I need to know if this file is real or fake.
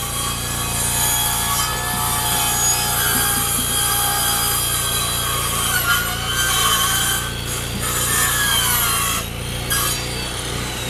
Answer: real